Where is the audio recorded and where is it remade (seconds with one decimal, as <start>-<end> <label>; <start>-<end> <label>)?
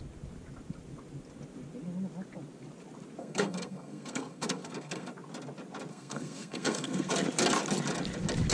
0.0-3.2 recorded; 3.2-5.1 remade; 5.1-5.9 recorded; 5.9-7.1 remade; 7.1-8.5 recorded